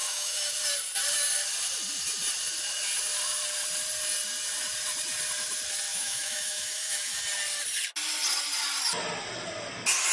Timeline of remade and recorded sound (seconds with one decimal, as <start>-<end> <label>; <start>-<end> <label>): 0.0-0.5 remade; 0.5-5.9 recorded; 5.9-7.2 remade; 7.2-10.1 recorded